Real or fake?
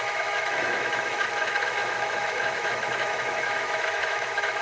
fake